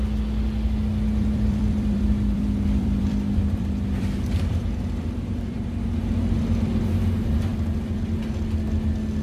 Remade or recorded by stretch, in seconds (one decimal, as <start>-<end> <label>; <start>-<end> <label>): 0.0-1.1 recorded; 1.1-6.0 remade; 6.0-7.5 recorded; 7.5-8.2 remade; 8.2-9.2 recorded